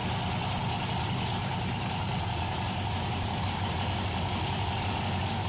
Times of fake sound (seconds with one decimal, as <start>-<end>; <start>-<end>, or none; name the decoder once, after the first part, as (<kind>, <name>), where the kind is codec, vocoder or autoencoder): 1.4-3.4 (vocoder, BigVGAN v2)